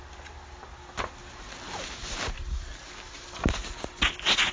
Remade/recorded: recorded